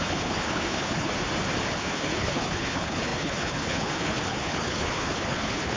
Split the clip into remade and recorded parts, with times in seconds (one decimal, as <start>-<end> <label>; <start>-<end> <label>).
0.0-1.1 remade; 1.1-1.7 recorded; 1.7-5.8 remade